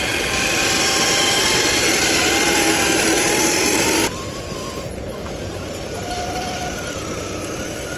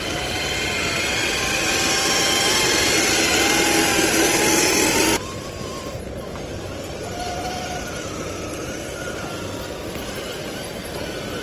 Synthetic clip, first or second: first